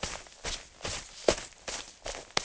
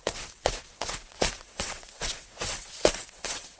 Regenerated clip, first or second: second